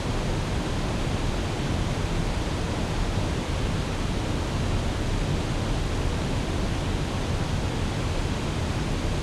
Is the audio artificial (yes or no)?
no